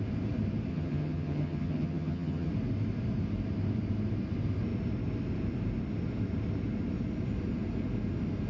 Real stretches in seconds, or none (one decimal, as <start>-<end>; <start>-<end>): 0.0-0.7; 2.5-8.5